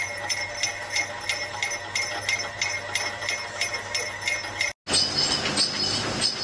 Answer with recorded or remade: recorded